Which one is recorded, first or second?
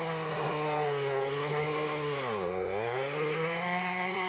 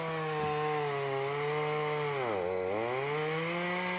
second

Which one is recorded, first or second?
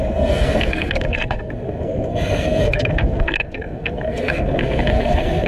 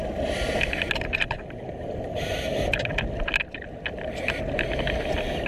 second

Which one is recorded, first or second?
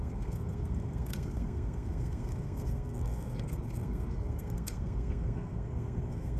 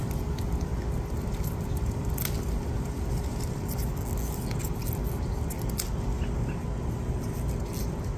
second